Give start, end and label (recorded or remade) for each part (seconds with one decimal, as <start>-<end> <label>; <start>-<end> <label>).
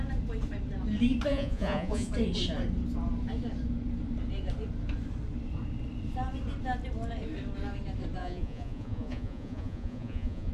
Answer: 0.0-1.3 recorded; 1.3-2.1 remade; 2.1-8.2 recorded; 8.2-10.5 remade